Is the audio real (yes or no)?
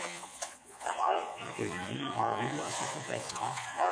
no